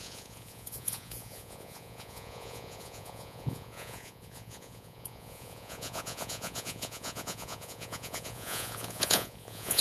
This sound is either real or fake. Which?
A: fake